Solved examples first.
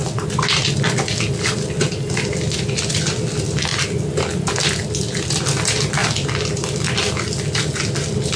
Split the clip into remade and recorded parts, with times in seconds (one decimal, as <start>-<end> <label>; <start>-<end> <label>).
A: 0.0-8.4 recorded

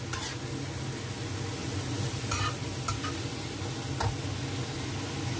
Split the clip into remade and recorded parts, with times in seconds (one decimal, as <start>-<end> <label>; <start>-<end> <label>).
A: 0.0-5.4 recorded

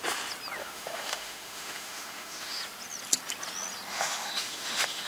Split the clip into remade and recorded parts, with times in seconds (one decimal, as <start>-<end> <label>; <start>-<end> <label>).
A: 0.0-0.6 recorded; 0.6-2.6 remade; 2.6-3.9 recorded; 3.9-5.1 remade

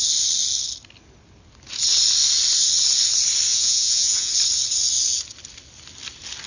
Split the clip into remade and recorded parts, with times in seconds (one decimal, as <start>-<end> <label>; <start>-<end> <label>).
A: 0.0-3.5 recorded; 3.5-4.3 remade; 4.3-6.5 recorded

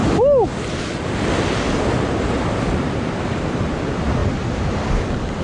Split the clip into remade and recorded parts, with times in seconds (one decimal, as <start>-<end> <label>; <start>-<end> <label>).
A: 0.0-5.4 recorded